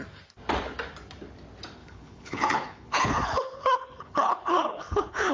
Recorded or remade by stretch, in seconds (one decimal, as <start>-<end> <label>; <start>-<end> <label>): 0.0-1.8 recorded; 1.8-5.3 remade